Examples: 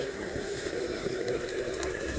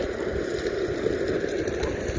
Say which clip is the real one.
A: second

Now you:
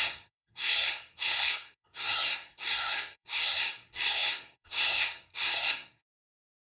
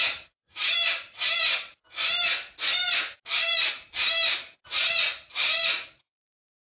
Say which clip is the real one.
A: second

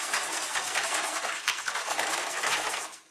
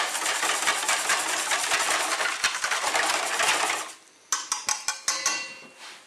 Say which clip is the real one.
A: second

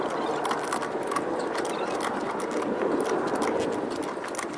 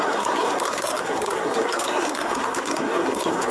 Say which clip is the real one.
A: first